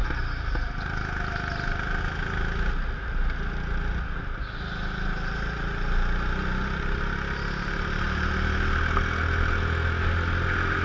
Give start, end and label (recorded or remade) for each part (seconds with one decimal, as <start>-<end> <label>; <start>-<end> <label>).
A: 0.0-10.8 recorded